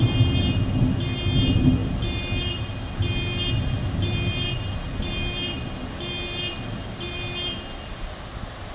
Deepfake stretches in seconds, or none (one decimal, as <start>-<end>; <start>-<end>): none